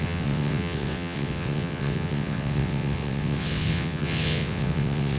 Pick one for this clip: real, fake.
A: fake